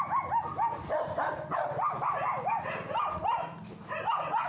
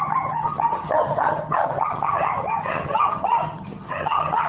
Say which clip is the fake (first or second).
second